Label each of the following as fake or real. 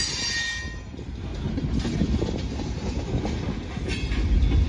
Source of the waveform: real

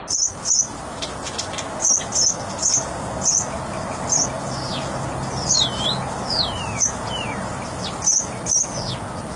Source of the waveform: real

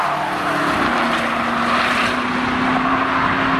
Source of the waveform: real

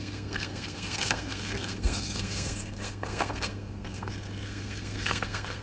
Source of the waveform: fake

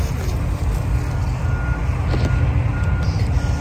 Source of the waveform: real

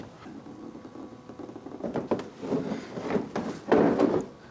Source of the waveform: real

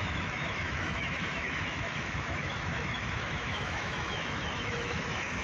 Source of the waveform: fake